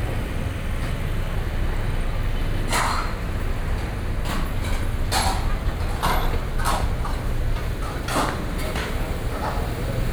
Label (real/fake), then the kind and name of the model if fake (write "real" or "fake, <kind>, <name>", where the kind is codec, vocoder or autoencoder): real